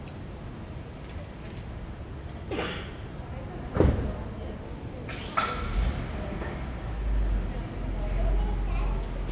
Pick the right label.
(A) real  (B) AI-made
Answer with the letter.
A